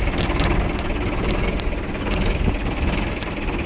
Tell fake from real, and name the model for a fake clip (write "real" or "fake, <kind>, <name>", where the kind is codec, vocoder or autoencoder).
real